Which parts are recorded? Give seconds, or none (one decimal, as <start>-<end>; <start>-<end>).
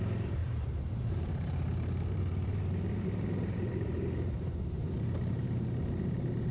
none